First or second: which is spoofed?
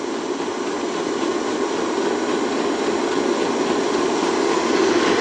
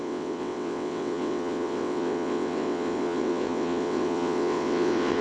second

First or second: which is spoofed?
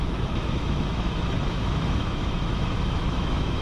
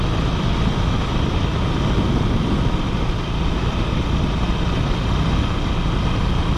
first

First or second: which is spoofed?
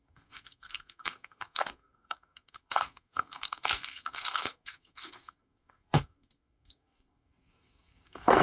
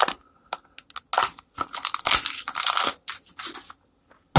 first